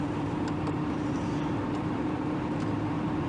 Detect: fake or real fake